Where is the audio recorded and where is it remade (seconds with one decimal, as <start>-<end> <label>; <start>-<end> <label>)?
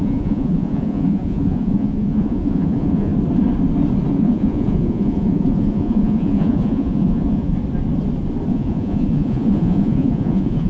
0.0-3.1 remade; 3.1-4.1 recorded; 4.1-7.5 remade; 7.5-8.5 recorded; 8.5-10.7 remade